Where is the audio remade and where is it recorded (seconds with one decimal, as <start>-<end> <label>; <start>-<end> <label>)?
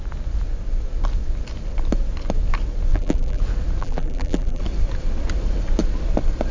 0.0-2.9 recorded; 2.9-3.4 remade; 3.4-3.8 recorded; 3.8-4.6 remade; 4.6-6.5 recorded